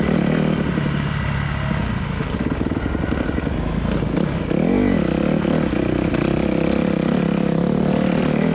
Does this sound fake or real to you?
real